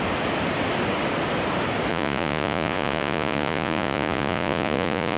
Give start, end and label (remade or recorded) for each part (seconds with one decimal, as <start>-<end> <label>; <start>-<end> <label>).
0.0-1.9 recorded; 1.9-5.2 remade